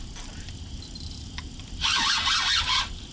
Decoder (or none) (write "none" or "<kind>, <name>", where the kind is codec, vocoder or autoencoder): none